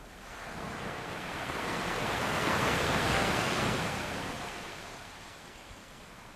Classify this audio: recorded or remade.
remade